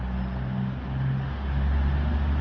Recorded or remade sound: recorded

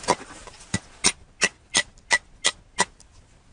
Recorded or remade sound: recorded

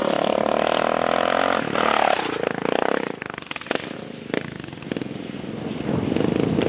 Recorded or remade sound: recorded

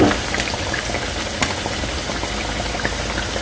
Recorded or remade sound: recorded